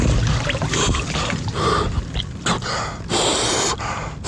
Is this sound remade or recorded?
recorded